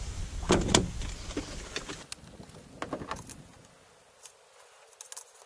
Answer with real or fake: real